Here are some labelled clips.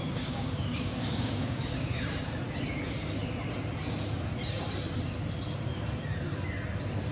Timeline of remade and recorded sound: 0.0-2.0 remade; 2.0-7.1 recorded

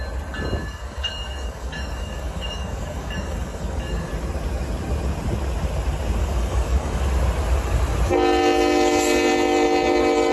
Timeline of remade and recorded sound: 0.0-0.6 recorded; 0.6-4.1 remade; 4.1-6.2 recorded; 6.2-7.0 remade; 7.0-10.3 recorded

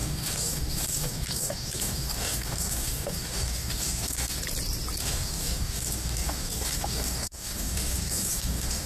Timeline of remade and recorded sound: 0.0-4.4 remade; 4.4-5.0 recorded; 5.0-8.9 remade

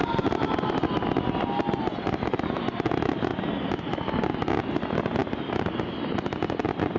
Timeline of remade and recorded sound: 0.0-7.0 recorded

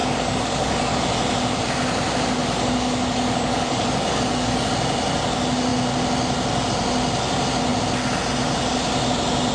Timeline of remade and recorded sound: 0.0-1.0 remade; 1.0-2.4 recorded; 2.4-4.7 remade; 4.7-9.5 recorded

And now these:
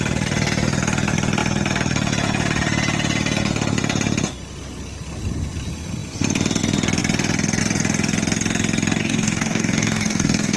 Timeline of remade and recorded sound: 0.0-9.0 recorded; 9.0-10.6 remade

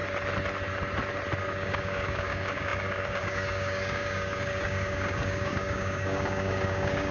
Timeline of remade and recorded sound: 0.0-1.4 recorded; 1.4-7.1 remade